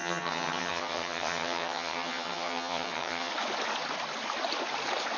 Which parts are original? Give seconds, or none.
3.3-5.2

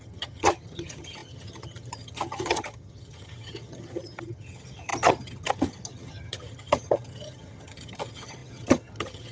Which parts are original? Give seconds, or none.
none